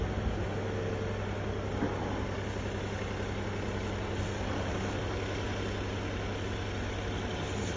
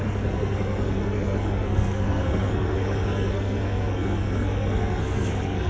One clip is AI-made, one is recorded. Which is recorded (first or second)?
first